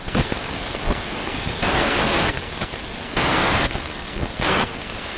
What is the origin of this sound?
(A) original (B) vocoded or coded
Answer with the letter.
B